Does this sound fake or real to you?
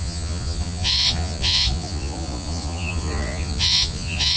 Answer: fake